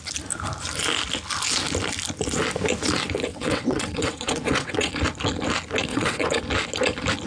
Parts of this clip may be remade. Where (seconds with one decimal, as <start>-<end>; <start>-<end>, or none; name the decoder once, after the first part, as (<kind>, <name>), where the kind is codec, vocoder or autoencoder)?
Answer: 3.3-4.9 (vocoder, WaveNeXt); 5.9-6.4